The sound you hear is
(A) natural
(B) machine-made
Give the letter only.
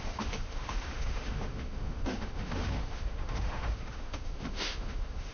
B